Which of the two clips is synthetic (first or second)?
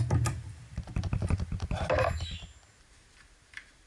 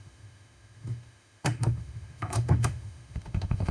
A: second